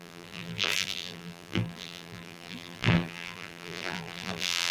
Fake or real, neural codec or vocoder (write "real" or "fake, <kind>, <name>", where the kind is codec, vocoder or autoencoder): fake, vocoder, BigVGAN v2